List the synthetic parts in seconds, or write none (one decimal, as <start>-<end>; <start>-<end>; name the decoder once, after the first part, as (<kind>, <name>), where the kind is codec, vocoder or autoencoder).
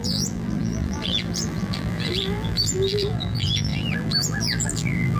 0.0-5.2 (vocoder, BigVGAN v2)